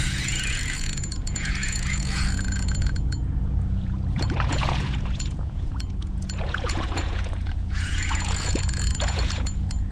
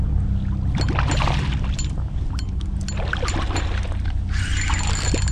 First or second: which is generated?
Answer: first